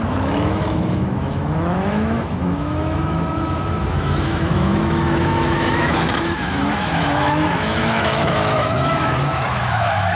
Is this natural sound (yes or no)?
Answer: no